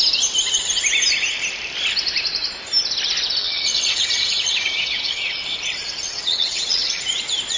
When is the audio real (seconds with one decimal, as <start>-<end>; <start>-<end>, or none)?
0.0-3.4; 7.0-7.6